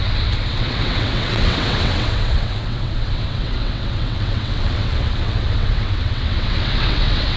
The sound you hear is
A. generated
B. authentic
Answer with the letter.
A